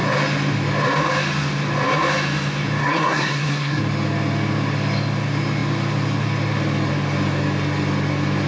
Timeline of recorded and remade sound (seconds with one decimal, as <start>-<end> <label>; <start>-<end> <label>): 0.0-2.8 recorded; 2.8-3.8 remade; 3.8-8.5 recorded